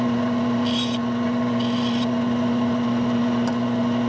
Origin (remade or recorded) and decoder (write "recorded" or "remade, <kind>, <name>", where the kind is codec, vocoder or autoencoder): recorded